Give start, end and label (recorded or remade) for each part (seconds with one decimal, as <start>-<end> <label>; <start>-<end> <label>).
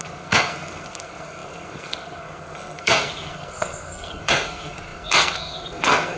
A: 0.0-6.2 remade